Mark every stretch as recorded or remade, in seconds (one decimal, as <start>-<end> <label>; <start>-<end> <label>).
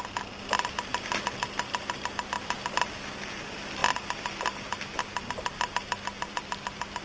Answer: 0.0-7.0 recorded